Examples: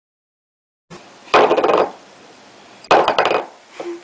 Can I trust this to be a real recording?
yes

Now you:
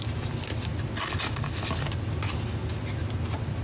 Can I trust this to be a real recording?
yes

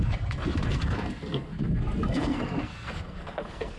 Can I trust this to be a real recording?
no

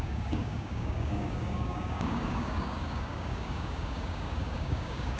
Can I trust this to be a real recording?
no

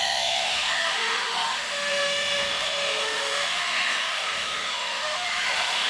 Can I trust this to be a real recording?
no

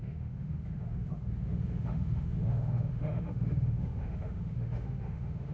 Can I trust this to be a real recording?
no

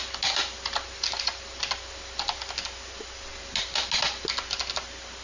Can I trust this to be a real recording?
yes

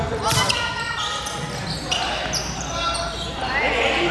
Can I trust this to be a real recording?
no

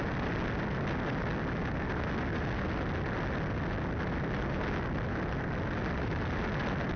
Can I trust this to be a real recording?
yes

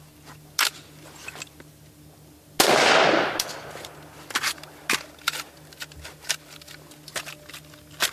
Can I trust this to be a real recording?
yes